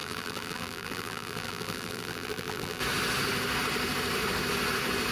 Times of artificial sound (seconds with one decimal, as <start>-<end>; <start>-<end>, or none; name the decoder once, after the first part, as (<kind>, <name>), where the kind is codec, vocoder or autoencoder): 0.0-2.8 (vocoder, BigVGAN v2)